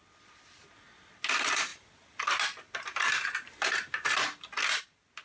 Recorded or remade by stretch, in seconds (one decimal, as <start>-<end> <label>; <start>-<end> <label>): 0.0-5.2 recorded